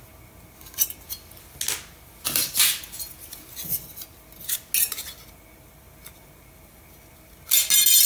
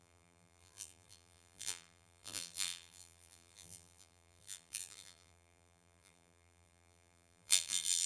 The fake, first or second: second